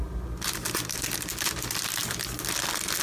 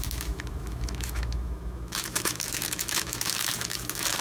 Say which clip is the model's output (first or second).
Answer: second